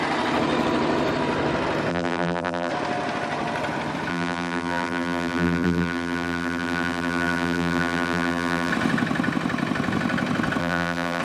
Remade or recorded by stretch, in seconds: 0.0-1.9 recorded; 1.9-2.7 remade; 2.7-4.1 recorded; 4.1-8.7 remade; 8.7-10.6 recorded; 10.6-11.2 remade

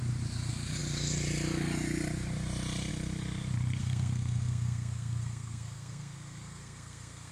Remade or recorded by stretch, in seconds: 0.0-3.8 recorded; 3.8-7.3 remade

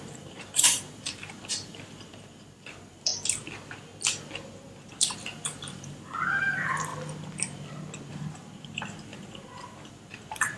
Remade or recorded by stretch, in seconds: 0.0-3.1 remade; 3.1-4.9 recorded; 4.9-6.9 remade; 6.9-8.1 recorded; 8.1-10.6 remade

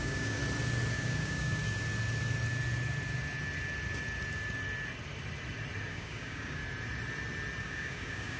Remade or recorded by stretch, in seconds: 0.0-0.4 remade; 0.4-0.9 recorded; 0.9-1.6 remade; 1.6-5.9 recorded; 5.9-6.6 remade; 6.6-7.6 recorded; 7.6-8.4 remade

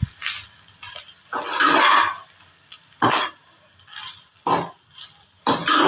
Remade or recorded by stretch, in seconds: 0.0-5.9 recorded

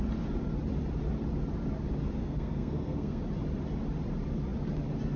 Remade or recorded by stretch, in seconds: 0.0-2.2 recorded; 2.2-3.2 remade; 3.2-5.2 recorded

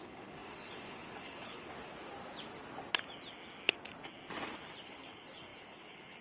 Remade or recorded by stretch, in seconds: 0.0-1.7 remade; 1.7-4.8 recorded; 4.8-6.2 remade